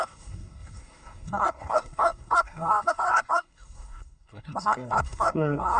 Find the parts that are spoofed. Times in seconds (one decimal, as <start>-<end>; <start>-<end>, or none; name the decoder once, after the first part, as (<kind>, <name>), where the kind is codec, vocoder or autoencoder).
0.0-5.8 (codec, SNAC)